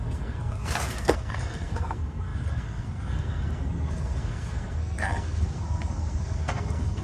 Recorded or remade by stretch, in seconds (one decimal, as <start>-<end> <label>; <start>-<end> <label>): 0.0-7.0 remade